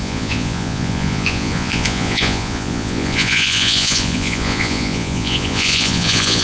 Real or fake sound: fake